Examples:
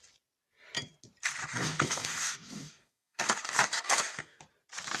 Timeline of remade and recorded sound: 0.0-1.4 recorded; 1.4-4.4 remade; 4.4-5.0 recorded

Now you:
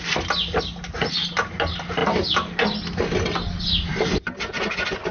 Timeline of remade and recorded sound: 0.0-5.1 recorded

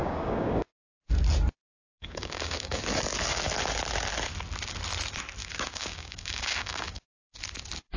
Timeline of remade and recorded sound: 0.0-0.8 remade; 0.8-1.7 recorded; 1.7-2.8 remade; 2.8-5.4 recorded; 5.4-7.4 remade; 7.4-8.0 recorded

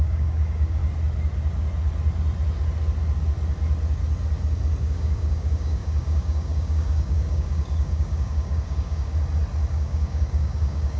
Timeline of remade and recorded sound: 0.0-0.8 remade; 0.8-4.8 recorded; 4.8-9.1 remade; 9.1-9.7 recorded; 9.7-11.0 remade

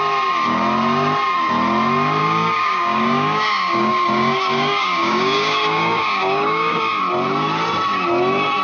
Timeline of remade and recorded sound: 0.0-2.2 recorded; 2.2-7.0 remade; 7.0-8.6 recorded

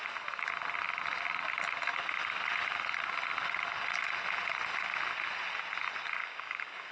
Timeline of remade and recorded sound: 0.0-6.2 recorded; 6.2-6.9 remade